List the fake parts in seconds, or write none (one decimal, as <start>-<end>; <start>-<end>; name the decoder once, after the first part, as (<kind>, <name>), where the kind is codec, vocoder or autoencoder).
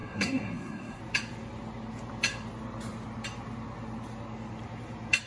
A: 0.0-1.0 (codec, SNAC)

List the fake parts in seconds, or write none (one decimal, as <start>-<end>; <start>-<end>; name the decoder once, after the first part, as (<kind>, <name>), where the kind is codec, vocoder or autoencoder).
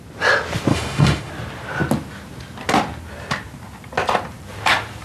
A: 0.7-1.3 (autoencoder, DAC-VAE)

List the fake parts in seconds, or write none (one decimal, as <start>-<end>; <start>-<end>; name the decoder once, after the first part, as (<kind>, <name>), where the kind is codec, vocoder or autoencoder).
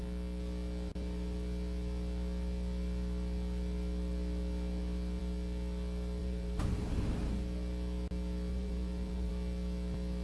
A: 6.2-7.3 (vocoder, BigVGAN v2); 8.5-9.3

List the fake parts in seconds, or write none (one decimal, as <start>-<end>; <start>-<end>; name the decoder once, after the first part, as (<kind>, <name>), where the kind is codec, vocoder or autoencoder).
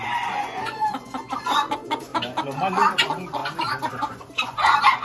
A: 0.0-2.1 (vocoder, Vocos); 2.7-3.4; 3.9-5.0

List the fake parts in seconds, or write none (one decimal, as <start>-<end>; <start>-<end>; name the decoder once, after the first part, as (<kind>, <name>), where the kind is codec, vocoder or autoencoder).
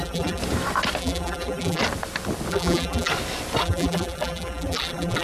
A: 0.0-0.4 (vocoder, BigVGAN v2); 1.0-1.8; 2.5-3.1; 3.6-5.2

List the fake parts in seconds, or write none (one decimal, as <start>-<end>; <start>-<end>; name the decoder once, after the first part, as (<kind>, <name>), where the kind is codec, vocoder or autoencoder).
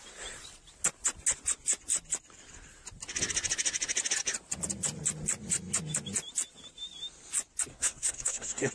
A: 7.7-8.7 (codec, SNAC)